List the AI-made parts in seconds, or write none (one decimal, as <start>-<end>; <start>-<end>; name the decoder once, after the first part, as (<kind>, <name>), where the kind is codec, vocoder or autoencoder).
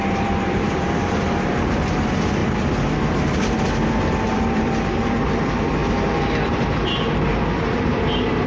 0.0-2.4 (vocoder, BigVGAN v2); 4.1-8.5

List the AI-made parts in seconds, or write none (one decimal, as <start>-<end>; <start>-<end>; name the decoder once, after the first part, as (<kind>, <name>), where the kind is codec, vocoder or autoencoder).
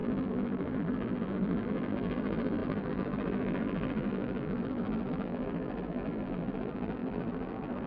0.0-7.9 (vocoder, BigVGAN v2)